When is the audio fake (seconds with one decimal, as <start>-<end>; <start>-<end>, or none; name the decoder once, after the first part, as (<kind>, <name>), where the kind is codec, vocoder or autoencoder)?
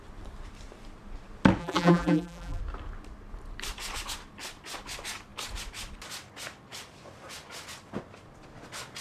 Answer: 1.6-2.6 (vocoder, BigVGAN v2)